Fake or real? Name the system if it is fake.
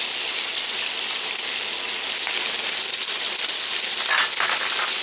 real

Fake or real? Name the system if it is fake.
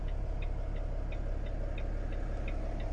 real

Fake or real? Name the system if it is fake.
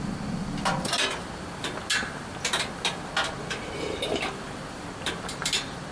real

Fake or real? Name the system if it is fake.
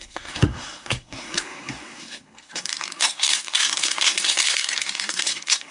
fake, codec, SNAC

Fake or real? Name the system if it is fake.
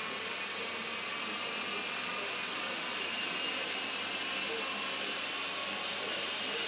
real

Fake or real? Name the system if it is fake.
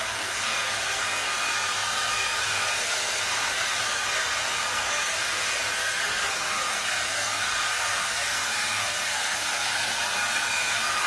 fake, codec, SNAC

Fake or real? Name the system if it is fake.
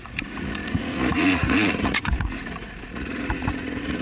fake, vocoder, Vocos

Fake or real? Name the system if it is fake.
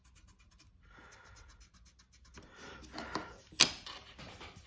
real